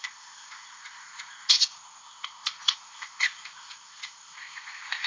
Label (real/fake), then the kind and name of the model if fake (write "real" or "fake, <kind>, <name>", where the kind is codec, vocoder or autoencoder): fake, codec, ZipCodec